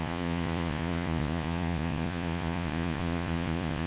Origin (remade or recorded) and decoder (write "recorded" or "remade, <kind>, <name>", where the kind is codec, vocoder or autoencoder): remade, vocoder, Vocos